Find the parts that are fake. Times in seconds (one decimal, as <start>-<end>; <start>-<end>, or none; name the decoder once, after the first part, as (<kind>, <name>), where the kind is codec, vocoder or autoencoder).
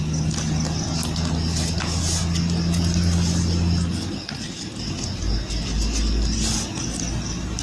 none